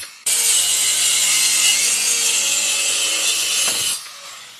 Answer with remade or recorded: remade